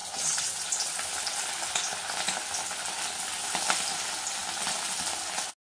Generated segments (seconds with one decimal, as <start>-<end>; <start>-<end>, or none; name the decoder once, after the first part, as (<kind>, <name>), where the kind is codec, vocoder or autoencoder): none